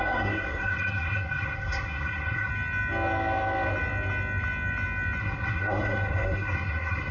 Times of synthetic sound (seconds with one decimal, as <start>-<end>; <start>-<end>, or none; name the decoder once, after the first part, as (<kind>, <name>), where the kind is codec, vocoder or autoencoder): 0.0-2.5 (codec, SNAC); 5.2-7.1